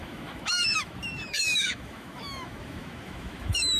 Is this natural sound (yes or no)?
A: no